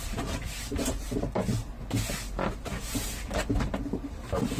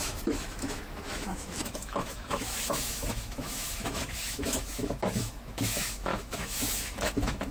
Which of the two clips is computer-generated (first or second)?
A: second